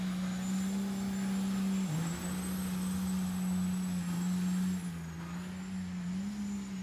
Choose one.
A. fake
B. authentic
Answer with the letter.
B